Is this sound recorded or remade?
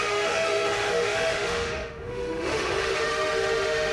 remade